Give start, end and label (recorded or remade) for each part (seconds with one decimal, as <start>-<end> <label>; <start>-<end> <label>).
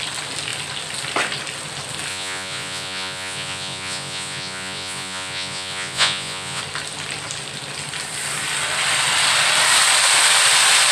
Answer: 0.0-2.1 recorded; 2.1-6.6 remade; 6.6-10.9 recorded